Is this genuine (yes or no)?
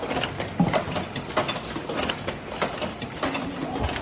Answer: yes